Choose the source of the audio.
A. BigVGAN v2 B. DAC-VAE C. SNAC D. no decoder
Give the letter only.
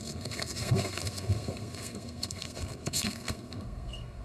C